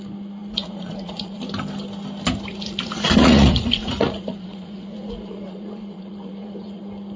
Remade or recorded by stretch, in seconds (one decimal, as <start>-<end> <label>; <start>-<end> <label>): 0.0-0.4 recorded; 0.4-1.4 remade; 1.4-2.5 recorded; 2.5-6.8 remade; 6.8-7.2 recorded

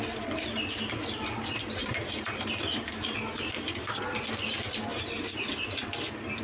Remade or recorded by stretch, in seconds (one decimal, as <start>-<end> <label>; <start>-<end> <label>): 0.0-1.8 recorded; 1.8-4.0 remade; 4.0-4.9 recorded; 4.9-5.4 remade; 5.4-6.4 recorded